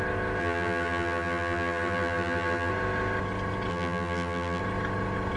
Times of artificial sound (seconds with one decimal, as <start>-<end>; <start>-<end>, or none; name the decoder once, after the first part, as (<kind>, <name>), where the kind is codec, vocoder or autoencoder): 0.4-2.7 (vocoder, BigVGAN v2); 3.7-4.6